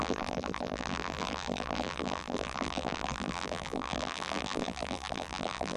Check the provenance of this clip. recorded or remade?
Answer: remade